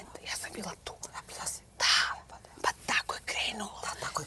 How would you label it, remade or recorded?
remade